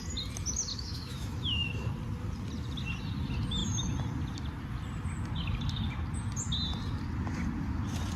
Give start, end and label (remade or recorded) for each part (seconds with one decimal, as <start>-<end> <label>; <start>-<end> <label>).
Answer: 0.0-0.7 recorded; 0.7-1.7 remade; 1.7-8.2 recorded